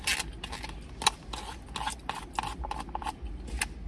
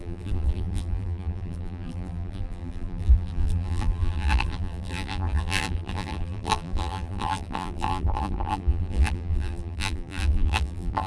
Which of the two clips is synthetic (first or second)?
second